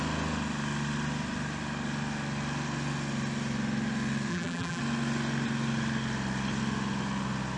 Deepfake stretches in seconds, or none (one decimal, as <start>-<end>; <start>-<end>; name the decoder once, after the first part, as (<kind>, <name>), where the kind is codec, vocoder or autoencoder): 4.3-4.8 (vocoder, BigVGAN v2)